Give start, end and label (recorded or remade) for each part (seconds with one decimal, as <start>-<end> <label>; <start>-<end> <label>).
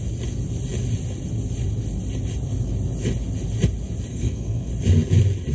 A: 0.0-4.1 recorded; 4.1-4.7 remade; 4.7-5.5 recorded